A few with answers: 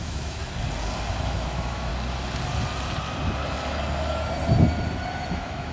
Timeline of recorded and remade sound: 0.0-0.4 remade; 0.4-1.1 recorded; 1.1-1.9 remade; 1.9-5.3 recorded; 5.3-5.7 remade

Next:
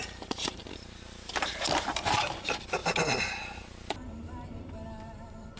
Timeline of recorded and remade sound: 0.0-0.6 remade; 0.6-1.9 recorded; 1.9-2.8 remade; 2.8-4.1 recorded; 4.1-5.6 remade

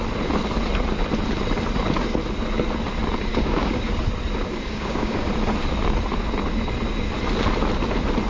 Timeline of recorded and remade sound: 0.0-3.3 recorded; 3.3-3.9 remade; 3.9-4.4 recorded; 4.4-5.3 remade; 5.3-8.3 recorded